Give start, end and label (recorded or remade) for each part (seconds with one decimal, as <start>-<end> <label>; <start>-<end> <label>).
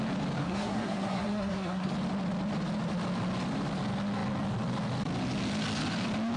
0.0-0.4 recorded; 0.4-1.9 remade; 1.9-6.4 recorded